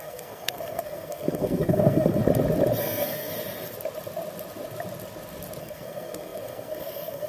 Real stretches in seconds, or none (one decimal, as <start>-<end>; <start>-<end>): 2.2-2.8; 3.3-5.6